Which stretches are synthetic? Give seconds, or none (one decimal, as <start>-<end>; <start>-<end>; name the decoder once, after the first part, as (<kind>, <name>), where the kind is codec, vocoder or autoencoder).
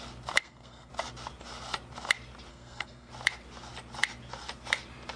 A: 0.4-0.9 (codec, SNAC); 2.5-3.1